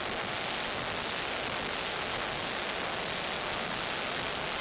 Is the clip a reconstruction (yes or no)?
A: no